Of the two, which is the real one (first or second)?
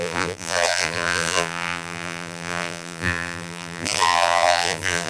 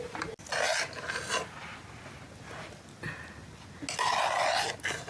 second